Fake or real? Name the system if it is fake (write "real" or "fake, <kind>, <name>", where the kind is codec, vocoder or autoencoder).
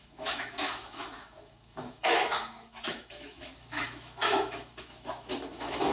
fake, autoencoder, DAC-VAE